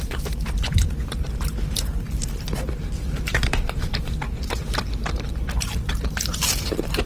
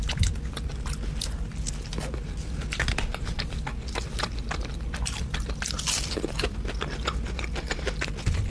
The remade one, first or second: first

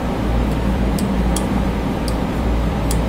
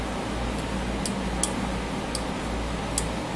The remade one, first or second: first